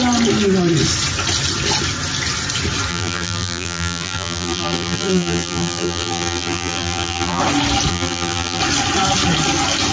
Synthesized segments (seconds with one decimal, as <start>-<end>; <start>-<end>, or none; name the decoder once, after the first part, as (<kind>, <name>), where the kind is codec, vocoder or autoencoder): 2.9-7.4 (vocoder, BigVGAN v2); 7.9-8.6